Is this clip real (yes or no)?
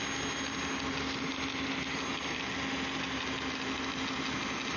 yes